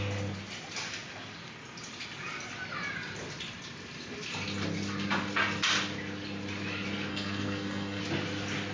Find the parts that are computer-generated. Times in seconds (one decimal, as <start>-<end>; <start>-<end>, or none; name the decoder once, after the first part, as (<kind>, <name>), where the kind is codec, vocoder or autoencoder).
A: 7.1-8.0 (codec, SNAC)